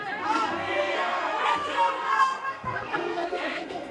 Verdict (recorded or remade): remade